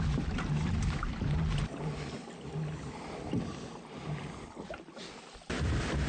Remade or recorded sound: recorded